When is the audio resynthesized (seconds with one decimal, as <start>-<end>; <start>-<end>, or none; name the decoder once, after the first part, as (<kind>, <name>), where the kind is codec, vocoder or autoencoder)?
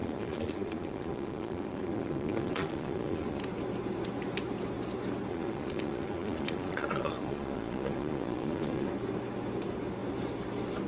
0.0-3.4 (vocoder, Vocos); 5.3-8.9